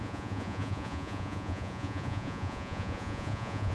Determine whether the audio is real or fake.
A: fake